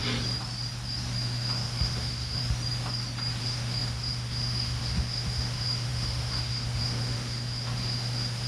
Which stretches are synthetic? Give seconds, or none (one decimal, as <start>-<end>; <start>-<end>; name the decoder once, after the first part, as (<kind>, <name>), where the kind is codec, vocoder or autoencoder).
1.2-2.4 (autoencoder, DAC-VAE); 3.4-8.5